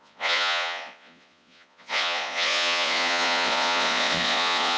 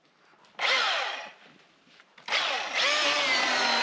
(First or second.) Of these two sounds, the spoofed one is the first